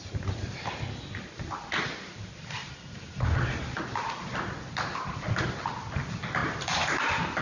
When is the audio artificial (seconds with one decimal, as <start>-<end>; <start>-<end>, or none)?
2.6-3.8; 6.4-7.4